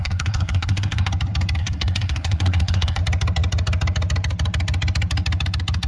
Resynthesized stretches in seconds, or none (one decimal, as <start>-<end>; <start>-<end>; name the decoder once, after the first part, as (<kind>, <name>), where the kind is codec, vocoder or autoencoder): 0.0-1.1 (codec, SNAC); 1.6-3.0